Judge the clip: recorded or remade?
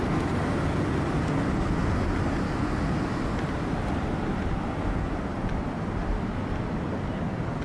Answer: recorded